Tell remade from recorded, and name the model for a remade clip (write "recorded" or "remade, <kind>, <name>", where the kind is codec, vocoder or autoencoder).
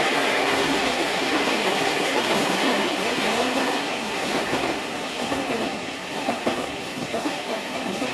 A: remade, codec, SNAC